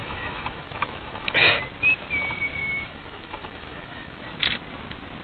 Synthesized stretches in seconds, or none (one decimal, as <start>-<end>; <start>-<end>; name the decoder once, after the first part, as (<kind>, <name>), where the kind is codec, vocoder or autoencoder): 0.0-1.6 (autoencoder, DAC-VAE); 2.6-4.2